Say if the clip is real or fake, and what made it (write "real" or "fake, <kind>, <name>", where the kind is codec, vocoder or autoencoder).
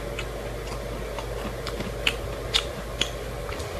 real